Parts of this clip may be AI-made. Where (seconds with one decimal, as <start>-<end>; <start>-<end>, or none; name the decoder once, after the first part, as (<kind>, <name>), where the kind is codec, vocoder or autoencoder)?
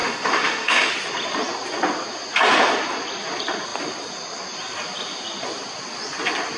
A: 0.0-0.9 (autoencoder, DAC-VAE)